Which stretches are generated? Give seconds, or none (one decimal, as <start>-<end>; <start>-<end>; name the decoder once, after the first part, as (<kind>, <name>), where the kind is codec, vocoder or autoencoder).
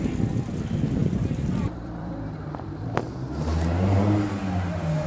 1.0-3.1 (vocoder, BigVGAN v2)